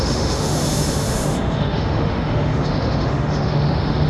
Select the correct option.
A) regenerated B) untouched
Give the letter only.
A